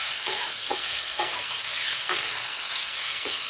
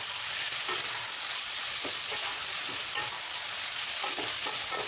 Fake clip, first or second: first